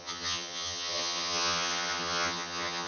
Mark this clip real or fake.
fake